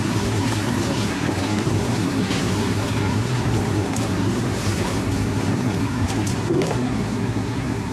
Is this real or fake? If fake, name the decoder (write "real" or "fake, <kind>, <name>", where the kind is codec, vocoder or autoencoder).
fake, codec, SNAC